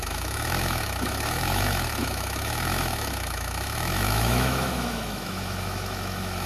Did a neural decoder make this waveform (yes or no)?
yes